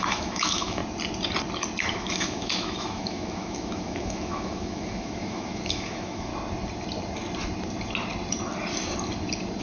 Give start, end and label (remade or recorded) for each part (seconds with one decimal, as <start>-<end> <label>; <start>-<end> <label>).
0.0-0.8 remade; 0.8-1.9 recorded; 1.9-6.3 remade; 6.3-9.6 recorded